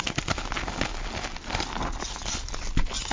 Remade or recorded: recorded